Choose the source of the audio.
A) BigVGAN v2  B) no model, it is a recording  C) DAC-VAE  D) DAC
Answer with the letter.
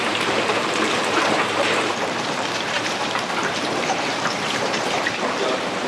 A